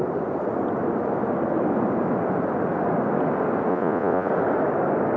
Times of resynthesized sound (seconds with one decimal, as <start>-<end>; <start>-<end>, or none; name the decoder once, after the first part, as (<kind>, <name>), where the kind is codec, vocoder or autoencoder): 3.7-4.3 (vocoder, Vocos)

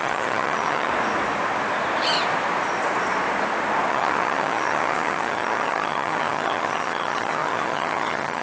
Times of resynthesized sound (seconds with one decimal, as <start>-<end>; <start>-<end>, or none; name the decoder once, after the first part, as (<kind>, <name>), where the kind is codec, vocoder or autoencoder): 0.0-0.9 (vocoder, HiFi-GAN); 3.9-8.4

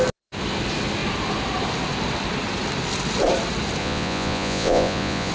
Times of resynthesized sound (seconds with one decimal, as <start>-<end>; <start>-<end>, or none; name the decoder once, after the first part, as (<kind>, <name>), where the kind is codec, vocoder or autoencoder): 3.8-5.3 (vocoder, Vocos)

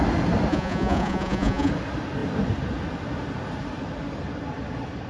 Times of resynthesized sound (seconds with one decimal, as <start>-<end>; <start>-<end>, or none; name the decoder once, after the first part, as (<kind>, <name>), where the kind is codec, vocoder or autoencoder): 0.5-1.7 (vocoder, Vocos)

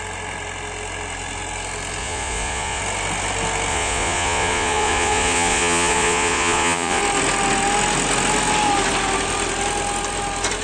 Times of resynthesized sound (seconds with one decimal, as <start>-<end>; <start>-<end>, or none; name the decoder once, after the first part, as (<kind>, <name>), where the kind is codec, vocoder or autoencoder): 2.0-2.8 (vocoder, Vocos); 3.7-7.0

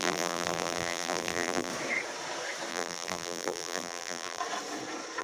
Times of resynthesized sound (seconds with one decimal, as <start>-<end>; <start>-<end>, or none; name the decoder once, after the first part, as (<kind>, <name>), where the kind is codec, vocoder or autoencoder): 0.0-1.7 (vocoder, BigVGAN v2); 2.7-4.4